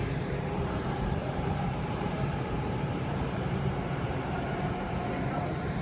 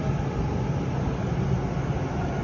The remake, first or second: first